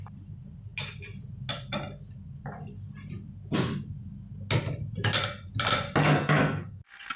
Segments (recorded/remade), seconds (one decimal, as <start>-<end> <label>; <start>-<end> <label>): 0.0-6.0 recorded; 6.0-6.8 remade; 6.8-7.2 recorded